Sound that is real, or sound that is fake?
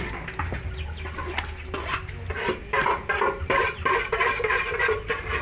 real